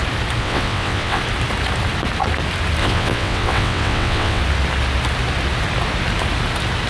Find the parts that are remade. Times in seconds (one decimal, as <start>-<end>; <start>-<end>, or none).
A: 0.4-1.2; 2.8-4.4